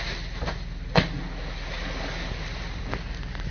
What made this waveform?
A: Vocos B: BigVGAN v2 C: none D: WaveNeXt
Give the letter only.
C